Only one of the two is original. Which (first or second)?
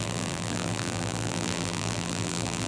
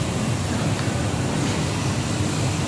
second